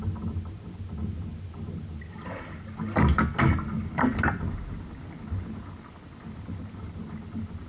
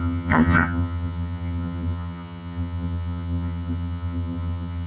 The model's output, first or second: second